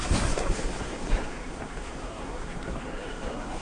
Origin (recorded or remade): remade